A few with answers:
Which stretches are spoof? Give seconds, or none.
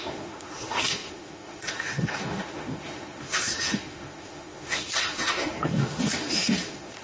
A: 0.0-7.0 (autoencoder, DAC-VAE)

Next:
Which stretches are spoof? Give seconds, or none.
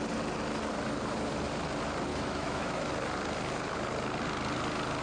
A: 2.1-2.9 (autoencoder, DAC-VAE)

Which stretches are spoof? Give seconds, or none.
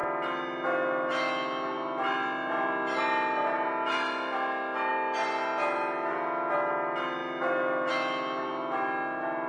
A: none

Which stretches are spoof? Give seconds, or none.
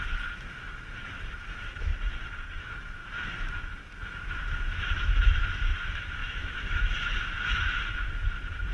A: 0.0-1.9 (autoencoder, DAC-VAE); 2.6-8.7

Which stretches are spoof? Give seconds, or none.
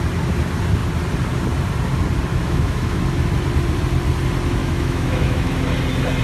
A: 2.3-3.0 (autoencoder, DAC-VAE); 4.6-5.5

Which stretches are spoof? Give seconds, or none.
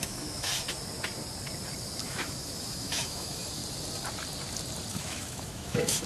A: 0.0-0.5 (autoencoder, DAC-VAE); 2.0-3.6; 4.9-6.1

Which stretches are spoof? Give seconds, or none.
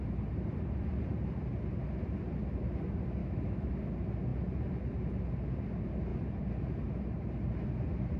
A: 3.2-3.7 (autoencoder, DAC-VAE)